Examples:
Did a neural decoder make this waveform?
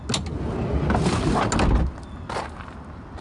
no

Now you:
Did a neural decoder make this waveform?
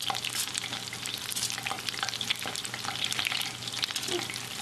no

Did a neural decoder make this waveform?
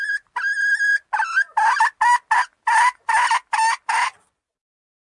no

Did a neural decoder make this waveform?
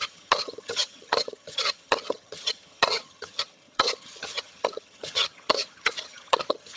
yes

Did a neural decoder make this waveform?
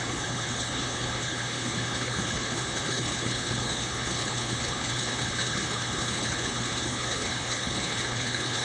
yes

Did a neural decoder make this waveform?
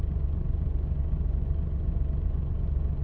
yes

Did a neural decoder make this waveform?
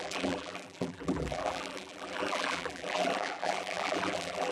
yes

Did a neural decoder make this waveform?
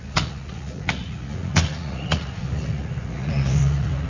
yes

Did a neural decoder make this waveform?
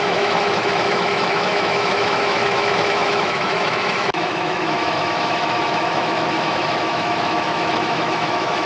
yes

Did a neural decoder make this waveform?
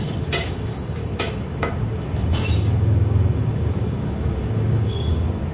yes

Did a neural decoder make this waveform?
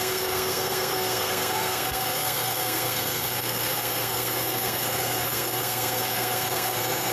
yes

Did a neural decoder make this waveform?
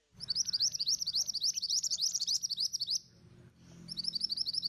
yes